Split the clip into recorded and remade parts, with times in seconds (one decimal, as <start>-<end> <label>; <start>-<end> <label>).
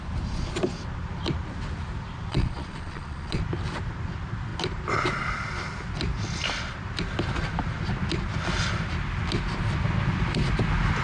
0.0-2.3 recorded; 2.3-3.4 remade; 3.4-11.0 recorded